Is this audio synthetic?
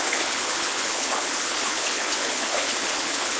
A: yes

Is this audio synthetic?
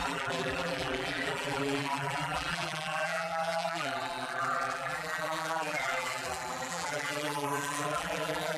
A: yes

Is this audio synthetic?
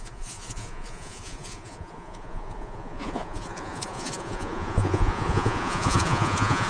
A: yes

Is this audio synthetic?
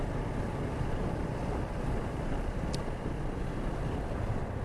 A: yes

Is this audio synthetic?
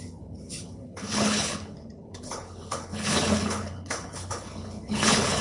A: yes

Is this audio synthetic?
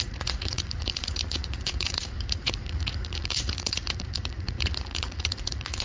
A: yes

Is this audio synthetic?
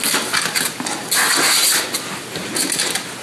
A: no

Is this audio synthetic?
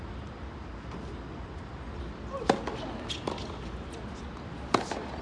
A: no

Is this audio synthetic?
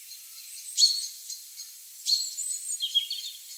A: yes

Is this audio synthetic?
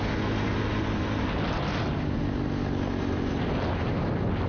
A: no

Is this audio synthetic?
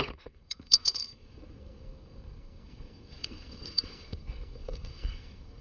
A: yes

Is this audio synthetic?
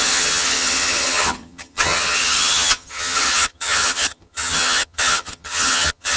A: yes